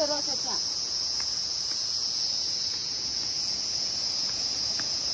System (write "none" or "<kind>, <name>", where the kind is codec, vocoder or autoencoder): vocoder, Vocos